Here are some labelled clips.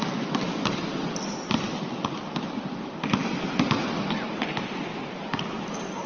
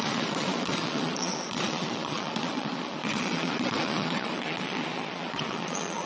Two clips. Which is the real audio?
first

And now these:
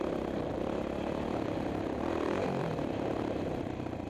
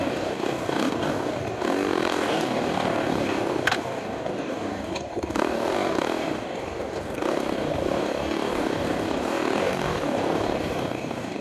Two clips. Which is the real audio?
first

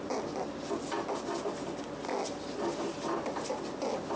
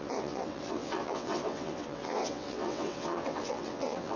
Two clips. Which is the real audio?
first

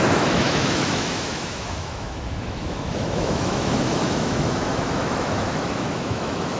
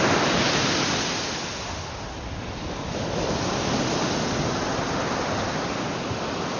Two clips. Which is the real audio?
second